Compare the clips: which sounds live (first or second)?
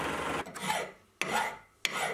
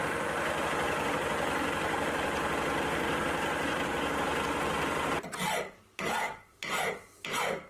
first